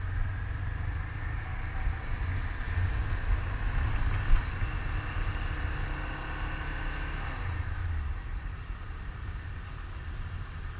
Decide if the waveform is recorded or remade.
recorded